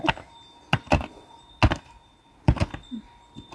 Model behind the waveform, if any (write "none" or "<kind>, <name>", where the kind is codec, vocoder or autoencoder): none